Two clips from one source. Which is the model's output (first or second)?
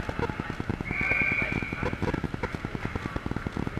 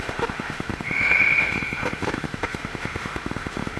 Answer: second